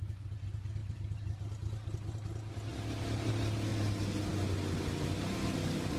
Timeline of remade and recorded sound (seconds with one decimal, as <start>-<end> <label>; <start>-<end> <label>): 0.0-2.7 recorded; 2.7-3.3 remade; 3.3-6.0 recorded